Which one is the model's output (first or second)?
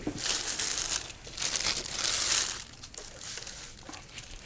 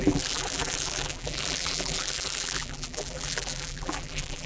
second